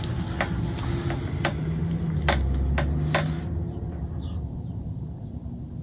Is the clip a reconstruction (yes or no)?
no